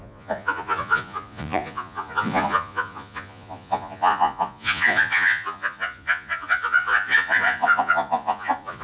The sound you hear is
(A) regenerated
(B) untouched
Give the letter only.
A